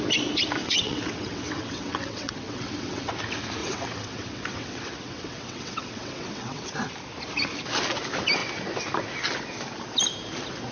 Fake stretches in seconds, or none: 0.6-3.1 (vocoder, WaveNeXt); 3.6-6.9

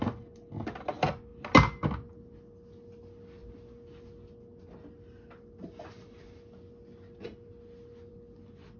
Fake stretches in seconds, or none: none

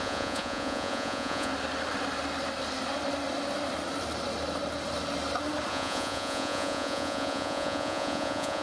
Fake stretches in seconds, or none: 0.0-1.5 (vocoder, Vocos); 5.7-8.6